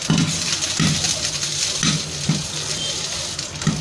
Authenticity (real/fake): real